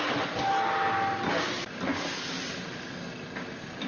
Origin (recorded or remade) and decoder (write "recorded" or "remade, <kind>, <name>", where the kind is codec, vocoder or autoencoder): recorded